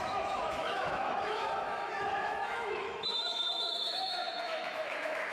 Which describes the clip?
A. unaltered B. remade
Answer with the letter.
B